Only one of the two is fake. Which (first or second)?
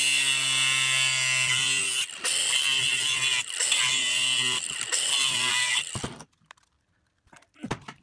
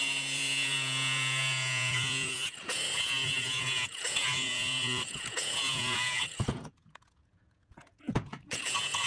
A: second